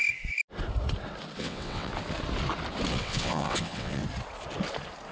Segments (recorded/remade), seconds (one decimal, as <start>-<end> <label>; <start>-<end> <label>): 0.0-1.4 recorded; 1.4-1.9 remade; 1.9-2.9 recorded; 2.9-4.0 remade; 4.0-5.1 recorded